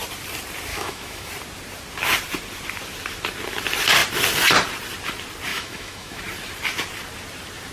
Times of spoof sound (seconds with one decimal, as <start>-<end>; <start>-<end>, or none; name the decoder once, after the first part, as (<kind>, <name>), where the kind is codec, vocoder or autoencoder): 0.7-1.3 (autoencoder, DAC-VAE); 5.5-6.2